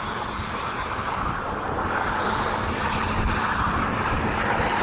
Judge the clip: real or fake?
real